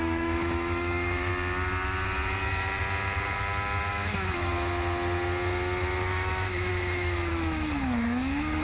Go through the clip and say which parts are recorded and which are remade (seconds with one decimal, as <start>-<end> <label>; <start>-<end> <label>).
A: 0.0-1.3 remade; 1.3-3.9 recorded; 3.9-4.5 remade; 4.5-6.0 recorded; 6.0-8.6 remade